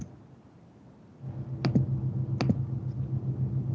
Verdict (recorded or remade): recorded